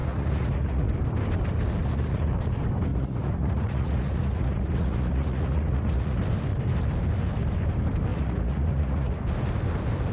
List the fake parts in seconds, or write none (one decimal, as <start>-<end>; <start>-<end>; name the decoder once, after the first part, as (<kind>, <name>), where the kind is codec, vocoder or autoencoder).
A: 0.0-0.9 (vocoder, Vocos); 1.8-2.3; 2.9-6.2; 8.1-9.2